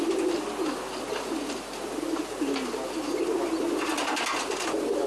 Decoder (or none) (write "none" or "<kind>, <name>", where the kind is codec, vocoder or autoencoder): none